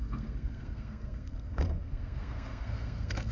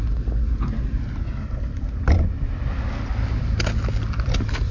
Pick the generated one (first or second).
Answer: first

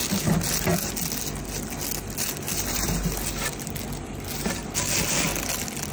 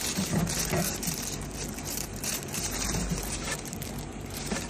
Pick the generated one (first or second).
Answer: second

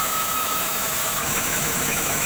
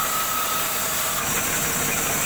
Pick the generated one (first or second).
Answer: first